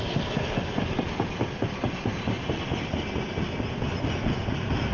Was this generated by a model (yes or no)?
no